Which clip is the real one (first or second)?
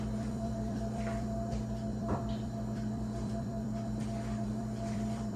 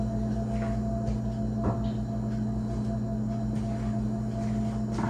second